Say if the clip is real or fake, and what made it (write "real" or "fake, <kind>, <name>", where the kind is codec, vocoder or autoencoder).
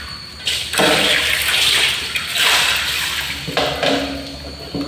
real